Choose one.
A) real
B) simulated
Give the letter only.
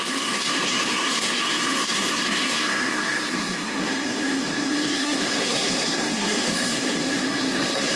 B